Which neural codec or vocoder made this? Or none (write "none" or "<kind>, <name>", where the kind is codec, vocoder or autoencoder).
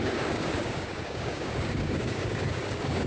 codec, DAC